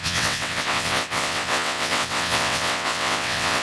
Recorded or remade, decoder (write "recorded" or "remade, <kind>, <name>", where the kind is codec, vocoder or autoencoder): remade, vocoder, WaveNeXt